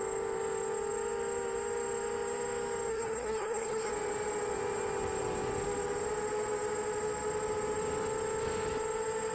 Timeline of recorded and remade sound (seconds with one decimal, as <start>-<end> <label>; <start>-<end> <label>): 0.0-2.9 recorded; 2.9-3.9 remade; 3.9-9.3 recorded